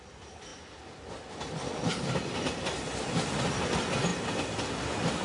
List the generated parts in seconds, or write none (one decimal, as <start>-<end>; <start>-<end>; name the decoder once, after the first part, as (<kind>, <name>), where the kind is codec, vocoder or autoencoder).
none